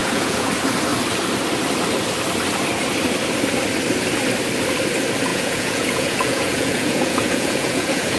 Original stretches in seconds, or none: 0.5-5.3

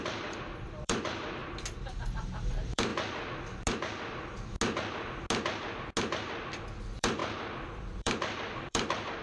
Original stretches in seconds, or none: 1.4-2.0; 2.9-6.8; 7.2-7.8

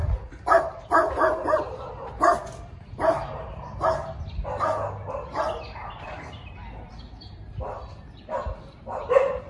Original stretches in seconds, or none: 0.0-9.5